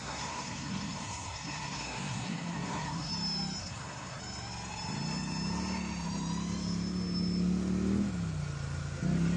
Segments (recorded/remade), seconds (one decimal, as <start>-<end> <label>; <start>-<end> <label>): 0.0-3.1 remade; 3.1-3.6 recorded; 3.6-4.2 remade; 4.2-9.4 recorded